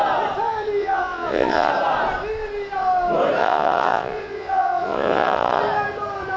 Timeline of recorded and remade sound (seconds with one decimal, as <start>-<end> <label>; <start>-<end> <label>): 0.0-0.8 recorded; 0.8-1.7 remade; 1.7-3.4 recorded; 3.4-5.6 remade; 5.6-6.4 recorded